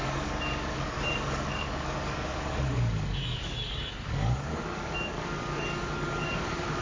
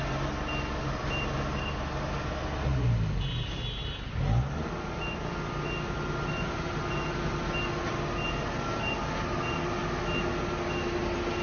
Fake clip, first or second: first